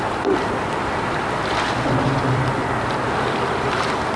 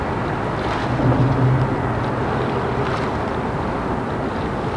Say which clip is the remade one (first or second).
first